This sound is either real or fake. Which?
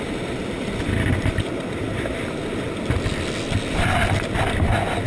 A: real